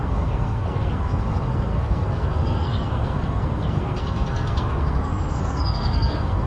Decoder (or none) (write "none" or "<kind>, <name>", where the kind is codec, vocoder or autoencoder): codec, SNAC